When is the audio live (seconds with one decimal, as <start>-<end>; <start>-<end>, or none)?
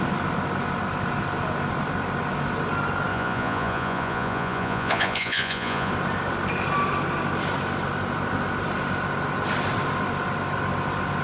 0.0-3.1; 5.9-11.2